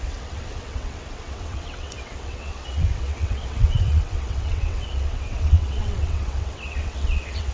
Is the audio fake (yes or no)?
yes